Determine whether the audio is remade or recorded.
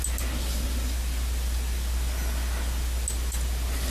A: recorded